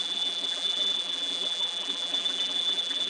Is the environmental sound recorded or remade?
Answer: remade